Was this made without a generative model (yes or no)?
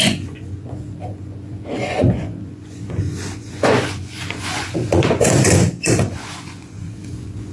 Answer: no